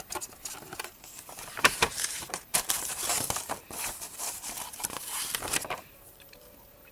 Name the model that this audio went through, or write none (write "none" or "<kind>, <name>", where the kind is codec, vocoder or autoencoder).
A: vocoder, BigVGAN v2